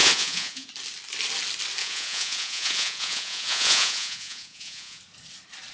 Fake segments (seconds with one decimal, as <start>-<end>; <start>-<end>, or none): 0.0-0.7; 1.8-5.0